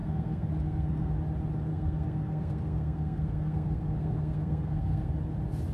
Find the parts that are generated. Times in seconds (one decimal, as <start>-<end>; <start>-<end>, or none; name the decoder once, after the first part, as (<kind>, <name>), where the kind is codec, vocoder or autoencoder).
0.0-1.1 (codec, SNAC); 1.7-5.1